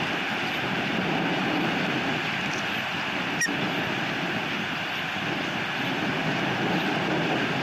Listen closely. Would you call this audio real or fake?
real